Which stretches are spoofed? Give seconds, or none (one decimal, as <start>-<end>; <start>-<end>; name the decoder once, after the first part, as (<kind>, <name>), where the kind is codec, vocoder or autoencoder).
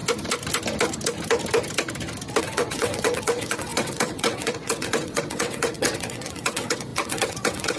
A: 2.4-7.8 (vocoder, WaveNeXt)